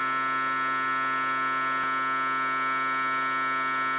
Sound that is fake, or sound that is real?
real